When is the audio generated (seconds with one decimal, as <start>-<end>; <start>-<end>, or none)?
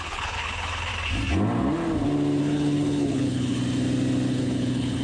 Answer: 0.0-0.9; 2.4-3.6; 4.3-5.0